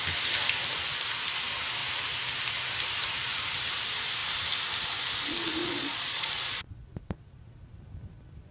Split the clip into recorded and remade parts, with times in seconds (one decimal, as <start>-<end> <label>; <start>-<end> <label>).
0.0-5.6 recorded; 5.6-7.4 remade; 7.4-8.5 recorded